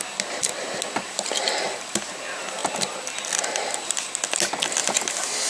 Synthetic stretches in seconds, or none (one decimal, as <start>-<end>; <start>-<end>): none